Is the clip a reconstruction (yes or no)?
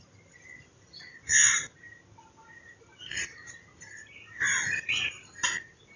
no